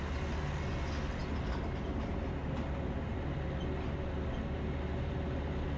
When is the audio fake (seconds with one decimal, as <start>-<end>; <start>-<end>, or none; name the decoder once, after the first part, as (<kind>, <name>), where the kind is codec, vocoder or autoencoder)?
none